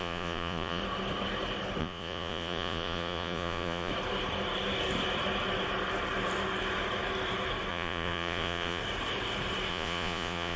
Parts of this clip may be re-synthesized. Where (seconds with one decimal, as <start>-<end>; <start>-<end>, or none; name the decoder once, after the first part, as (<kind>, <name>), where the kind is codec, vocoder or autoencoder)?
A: 0.0-0.8 (vocoder, Vocos); 1.8-3.9; 7.7-8.8; 9.7-10.6